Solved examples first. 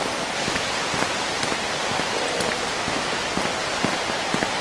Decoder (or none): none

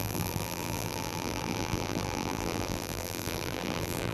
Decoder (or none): vocoder, BigVGAN v2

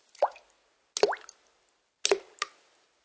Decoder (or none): none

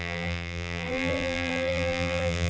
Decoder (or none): vocoder, BigVGAN v2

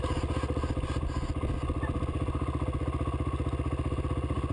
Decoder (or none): none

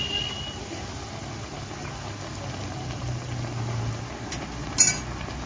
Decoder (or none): none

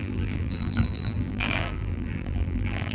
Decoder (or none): vocoder, BigVGAN v2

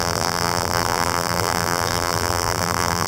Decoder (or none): vocoder, BigVGAN v2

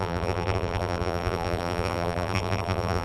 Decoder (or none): vocoder, BigVGAN v2